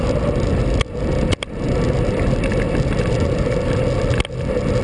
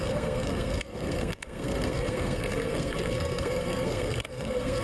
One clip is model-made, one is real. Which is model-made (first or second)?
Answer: second